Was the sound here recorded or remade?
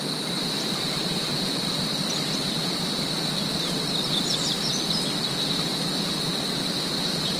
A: remade